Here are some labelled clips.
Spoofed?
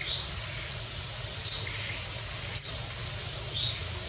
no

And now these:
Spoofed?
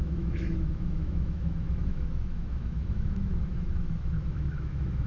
yes